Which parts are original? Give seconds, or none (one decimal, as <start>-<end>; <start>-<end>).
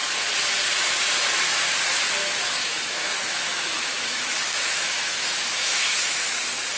0.0-2.2; 6.3-6.8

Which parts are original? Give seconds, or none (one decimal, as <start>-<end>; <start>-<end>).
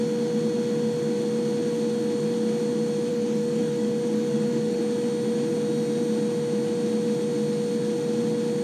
0.0-3.1; 4.8-8.6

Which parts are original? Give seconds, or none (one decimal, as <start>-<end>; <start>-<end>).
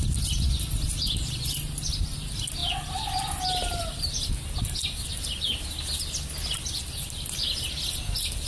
0.0-8.5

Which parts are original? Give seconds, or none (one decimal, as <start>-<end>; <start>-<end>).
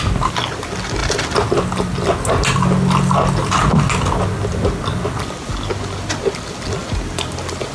0.0-7.7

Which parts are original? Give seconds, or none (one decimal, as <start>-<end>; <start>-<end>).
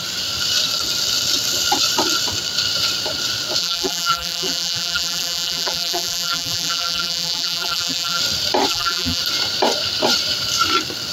0.0-3.6; 8.2-8.7; 9.2-11.1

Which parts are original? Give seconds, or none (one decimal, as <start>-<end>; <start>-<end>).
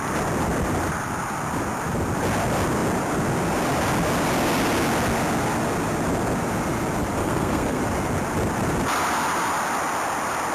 0.0-7.2; 7.8-10.5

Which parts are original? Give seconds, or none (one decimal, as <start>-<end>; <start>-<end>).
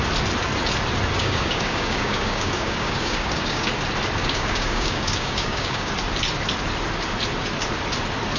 0.0-1.2; 3.7-4.2; 5.9-8.4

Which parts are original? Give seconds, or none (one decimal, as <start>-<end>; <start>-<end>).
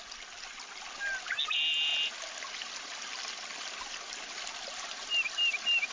0.0-5.9